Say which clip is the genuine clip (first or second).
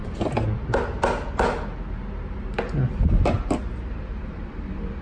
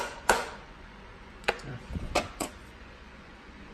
first